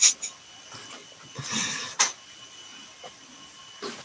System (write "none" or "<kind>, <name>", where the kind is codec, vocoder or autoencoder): none